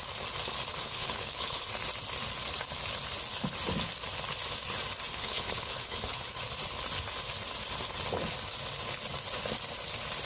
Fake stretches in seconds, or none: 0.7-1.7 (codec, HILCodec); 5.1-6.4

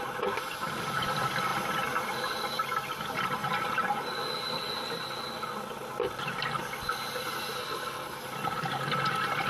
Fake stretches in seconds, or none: 7.6-8.2 (codec, HILCodec)

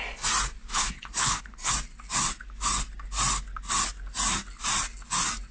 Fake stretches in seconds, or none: 0.7-1.7 (codec, HILCodec)